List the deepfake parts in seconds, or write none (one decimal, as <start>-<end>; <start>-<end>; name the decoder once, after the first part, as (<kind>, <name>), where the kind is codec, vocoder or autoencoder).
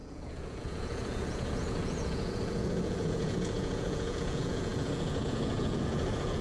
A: 0.0-6.4 (vocoder, Vocos)